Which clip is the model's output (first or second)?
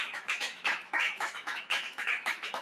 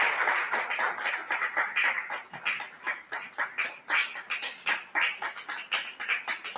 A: first